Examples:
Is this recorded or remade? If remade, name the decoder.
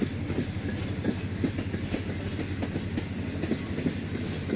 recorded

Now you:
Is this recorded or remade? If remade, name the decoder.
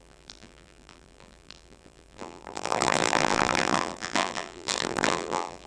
remade, vocoder, BigVGAN v2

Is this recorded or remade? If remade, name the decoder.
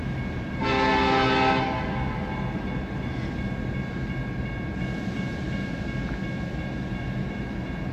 recorded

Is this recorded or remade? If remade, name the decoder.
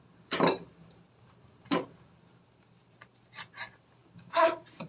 remade, vocoder, BigVGAN v2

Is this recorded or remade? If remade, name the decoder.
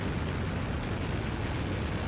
recorded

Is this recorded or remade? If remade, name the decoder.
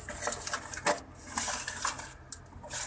recorded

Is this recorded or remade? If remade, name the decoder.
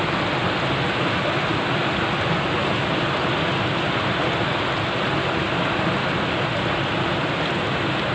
recorded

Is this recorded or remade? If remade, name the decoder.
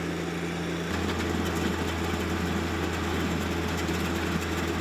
recorded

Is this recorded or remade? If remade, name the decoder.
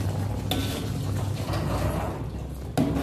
recorded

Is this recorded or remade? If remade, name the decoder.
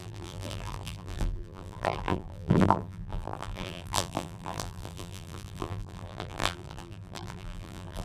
remade, vocoder, BigVGAN v2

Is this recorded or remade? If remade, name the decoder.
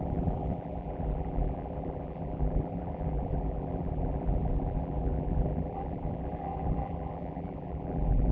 remade, vocoder, BigVGAN v2